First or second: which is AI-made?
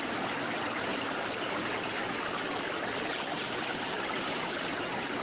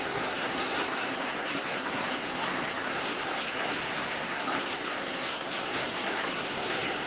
second